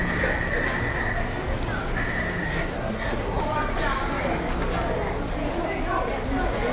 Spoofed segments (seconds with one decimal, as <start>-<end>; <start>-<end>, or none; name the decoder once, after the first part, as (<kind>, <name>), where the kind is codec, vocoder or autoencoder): 2.4-3.4 (codec, SNAC)